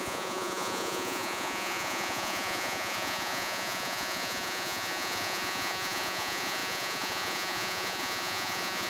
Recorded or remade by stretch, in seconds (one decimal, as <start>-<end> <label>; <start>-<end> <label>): 0.0-8.9 remade